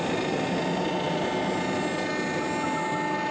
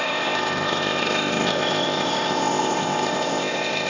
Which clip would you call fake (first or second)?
second